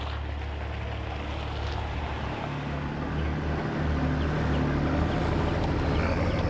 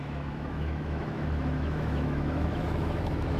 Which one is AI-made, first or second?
second